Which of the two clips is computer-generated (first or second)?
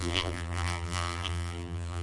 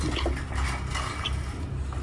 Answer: first